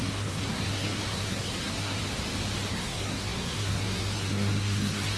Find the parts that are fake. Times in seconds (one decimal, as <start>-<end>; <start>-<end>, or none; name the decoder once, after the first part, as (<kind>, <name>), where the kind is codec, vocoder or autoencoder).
0.0-2.0 (codec, SNAC); 2.7-5.2